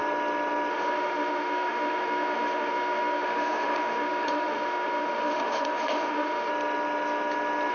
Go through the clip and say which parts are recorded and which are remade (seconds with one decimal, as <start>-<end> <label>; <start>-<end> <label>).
0.0-0.7 recorded; 0.7-6.5 remade; 6.5-7.7 recorded